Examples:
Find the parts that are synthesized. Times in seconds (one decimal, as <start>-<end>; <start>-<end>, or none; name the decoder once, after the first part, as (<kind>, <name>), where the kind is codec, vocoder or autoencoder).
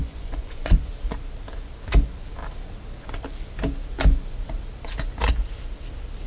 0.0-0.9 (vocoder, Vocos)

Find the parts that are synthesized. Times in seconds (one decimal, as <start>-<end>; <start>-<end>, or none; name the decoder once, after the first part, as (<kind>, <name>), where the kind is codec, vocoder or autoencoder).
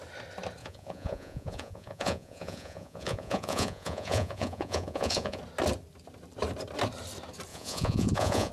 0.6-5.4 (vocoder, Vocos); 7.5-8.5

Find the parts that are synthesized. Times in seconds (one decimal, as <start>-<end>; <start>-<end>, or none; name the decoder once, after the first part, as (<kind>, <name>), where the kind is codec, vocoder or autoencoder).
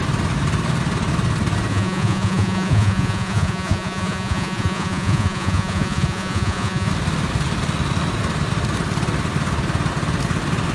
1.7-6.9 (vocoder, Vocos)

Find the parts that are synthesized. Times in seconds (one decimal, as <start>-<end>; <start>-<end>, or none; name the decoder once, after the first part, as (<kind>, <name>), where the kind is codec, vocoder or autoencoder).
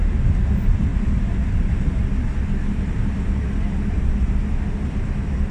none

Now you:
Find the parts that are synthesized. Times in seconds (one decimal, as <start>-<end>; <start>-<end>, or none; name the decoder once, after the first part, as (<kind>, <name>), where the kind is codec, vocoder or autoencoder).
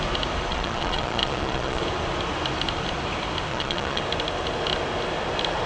0.5-1.8 (vocoder, Vocos); 3.5-4.0